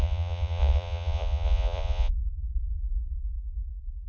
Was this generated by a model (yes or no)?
yes